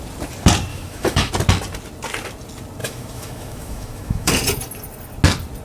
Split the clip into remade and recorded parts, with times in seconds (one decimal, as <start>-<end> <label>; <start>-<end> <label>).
0.0-0.7 recorded; 0.7-1.3 remade; 1.3-2.8 recorded; 2.8-4.3 remade; 4.3-5.6 recorded